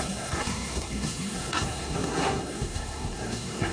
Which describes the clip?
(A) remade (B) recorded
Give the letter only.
A